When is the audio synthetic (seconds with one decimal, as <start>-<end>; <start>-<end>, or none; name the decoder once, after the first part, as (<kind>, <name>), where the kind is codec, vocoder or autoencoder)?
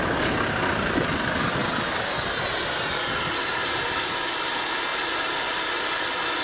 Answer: 4.9-5.4 (vocoder, BigVGAN v2)